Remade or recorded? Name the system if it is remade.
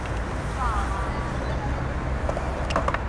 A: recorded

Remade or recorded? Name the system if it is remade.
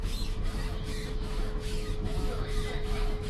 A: remade, autoencoder, DAC-VAE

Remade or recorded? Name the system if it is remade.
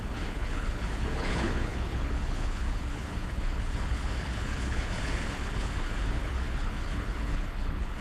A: remade, codec, HILCodec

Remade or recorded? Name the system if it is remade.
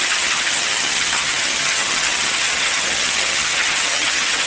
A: remade, vocoder, HiFi-GAN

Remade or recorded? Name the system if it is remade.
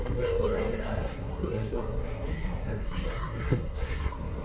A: remade, codec, SNAC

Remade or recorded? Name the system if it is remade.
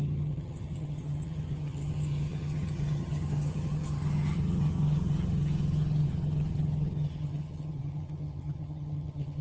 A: remade, vocoder, HiFi-GAN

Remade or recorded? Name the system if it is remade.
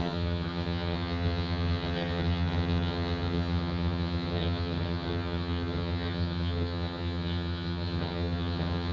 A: remade, vocoder, HiFi-GAN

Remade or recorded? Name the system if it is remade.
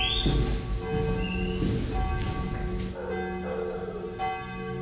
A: recorded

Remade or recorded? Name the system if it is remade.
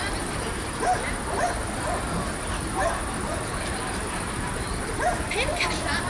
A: remade, vocoder, BigVGAN v2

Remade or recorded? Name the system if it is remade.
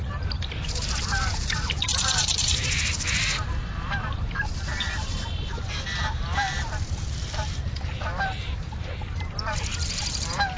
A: remade, vocoder, BigVGAN v2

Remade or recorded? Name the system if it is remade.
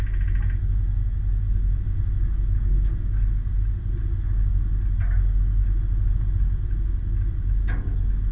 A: recorded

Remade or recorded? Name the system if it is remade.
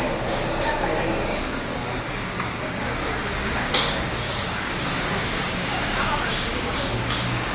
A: remade, codec, DAC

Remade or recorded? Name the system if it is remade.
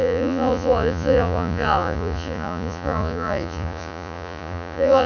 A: remade, vocoder, Vocos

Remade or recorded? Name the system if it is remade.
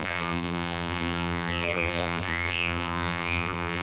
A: remade, vocoder, BigVGAN v2